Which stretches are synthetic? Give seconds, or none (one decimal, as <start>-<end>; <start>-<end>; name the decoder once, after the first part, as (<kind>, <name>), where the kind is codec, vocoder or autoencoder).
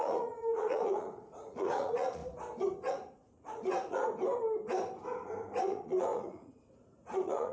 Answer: 0.0-2.2 (vocoder, Vocos); 2.9-4.0; 5.6-7.5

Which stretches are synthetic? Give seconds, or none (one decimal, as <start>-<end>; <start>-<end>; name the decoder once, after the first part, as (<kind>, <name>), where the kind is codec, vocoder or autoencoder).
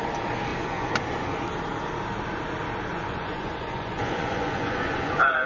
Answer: 0.5-1.4 (vocoder, Vocos); 2.9-5.5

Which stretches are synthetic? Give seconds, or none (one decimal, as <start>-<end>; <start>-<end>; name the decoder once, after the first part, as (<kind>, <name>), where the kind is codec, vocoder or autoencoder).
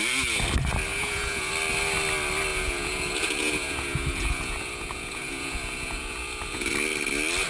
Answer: 0.9-1.5 (vocoder, Vocos); 2.5-6.7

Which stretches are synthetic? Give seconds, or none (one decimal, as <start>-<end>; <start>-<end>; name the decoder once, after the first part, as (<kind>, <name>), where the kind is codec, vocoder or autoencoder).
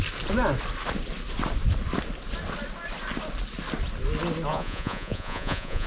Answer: 4.5-5.9 (vocoder, Vocos)